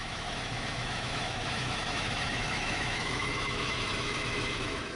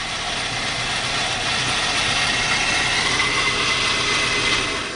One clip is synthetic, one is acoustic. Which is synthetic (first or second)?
first